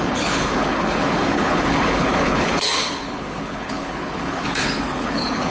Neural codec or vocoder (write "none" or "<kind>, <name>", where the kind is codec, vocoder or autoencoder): codec, HILCodec